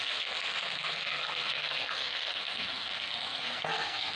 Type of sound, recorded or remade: remade